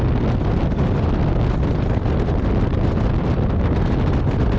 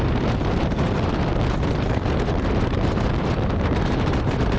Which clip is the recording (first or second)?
first